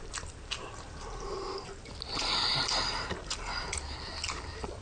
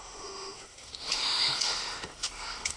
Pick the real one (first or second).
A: first